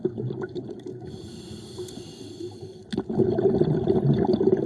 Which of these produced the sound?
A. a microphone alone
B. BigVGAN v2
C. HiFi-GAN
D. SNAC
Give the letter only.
A